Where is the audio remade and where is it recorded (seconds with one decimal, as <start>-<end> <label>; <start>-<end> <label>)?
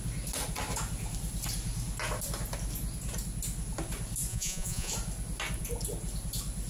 0.0-4.3 recorded; 4.3-4.9 remade; 4.9-6.7 recorded